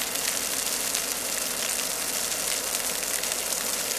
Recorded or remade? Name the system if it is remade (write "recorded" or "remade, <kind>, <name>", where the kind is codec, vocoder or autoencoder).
recorded